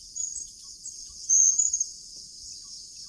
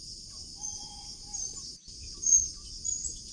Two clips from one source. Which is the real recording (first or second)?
second